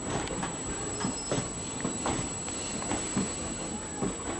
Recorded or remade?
recorded